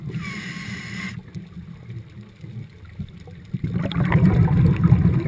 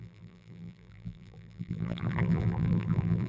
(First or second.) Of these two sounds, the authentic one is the first